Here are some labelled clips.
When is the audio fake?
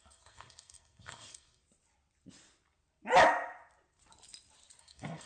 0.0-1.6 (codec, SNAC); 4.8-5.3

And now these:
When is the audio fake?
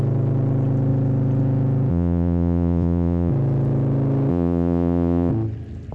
1.9-3.3 (vocoder, Vocos); 4.3-5.3